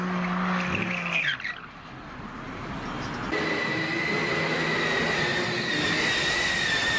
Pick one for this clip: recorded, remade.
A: recorded